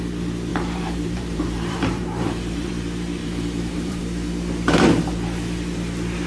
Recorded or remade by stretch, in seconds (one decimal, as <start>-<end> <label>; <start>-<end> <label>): 0.0-0.5 recorded; 0.5-2.7 remade; 2.7-3.2 recorded; 3.2-4.0 remade; 4.0-6.3 recorded